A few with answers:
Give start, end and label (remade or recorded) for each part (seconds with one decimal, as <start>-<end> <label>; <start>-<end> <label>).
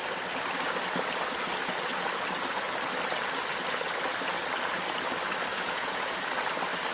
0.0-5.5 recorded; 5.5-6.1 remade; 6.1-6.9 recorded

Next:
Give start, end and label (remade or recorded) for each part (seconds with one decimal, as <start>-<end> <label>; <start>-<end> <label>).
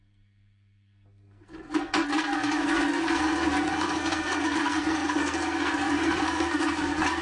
0.0-7.2 remade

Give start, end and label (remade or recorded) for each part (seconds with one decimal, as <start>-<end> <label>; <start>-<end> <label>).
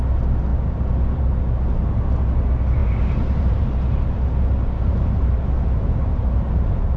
0.0-2.8 recorded; 2.8-7.0 remade